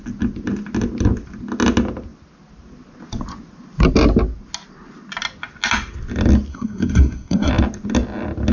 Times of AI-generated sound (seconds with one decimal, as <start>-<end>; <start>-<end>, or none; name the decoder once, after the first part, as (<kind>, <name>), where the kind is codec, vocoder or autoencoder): 6.5-7.5 (codec, SNAC)